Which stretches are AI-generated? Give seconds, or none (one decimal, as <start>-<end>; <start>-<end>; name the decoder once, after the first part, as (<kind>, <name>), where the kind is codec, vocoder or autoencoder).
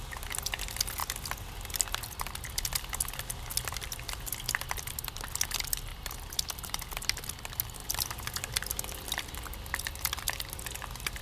none